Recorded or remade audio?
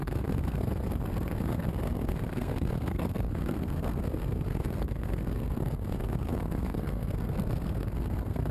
remade